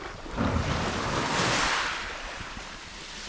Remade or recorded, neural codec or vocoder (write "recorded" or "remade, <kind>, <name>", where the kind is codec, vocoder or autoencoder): remade, vocoder, BigVGAN v2